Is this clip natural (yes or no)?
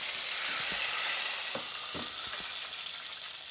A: yes